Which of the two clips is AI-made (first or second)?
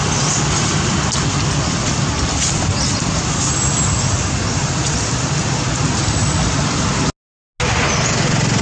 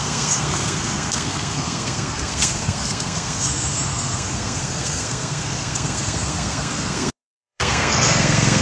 second